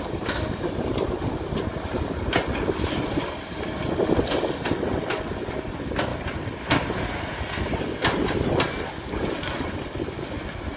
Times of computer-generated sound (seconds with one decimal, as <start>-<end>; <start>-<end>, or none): none